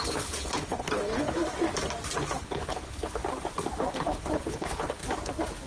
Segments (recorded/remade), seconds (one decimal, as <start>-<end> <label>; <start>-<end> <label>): 0.0-1.4 remade; 1.4-2.4 recorded; 2.4-3.2 remade; 3.2-3.9 recorded; 3.9-5.0 remade; 5.0-5.7 recorded